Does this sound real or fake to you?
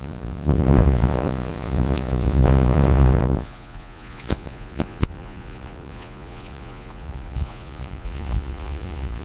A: fake